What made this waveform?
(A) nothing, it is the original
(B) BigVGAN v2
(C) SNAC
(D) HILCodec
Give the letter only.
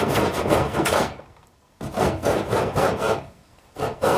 C